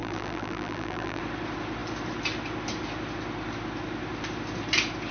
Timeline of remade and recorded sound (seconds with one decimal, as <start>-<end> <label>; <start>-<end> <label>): 0.0-1.2 remade; 1.2-5.1 recorded